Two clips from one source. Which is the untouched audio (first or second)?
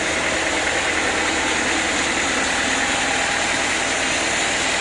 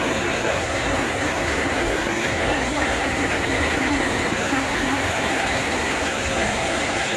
first